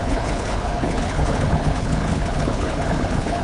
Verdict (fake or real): fake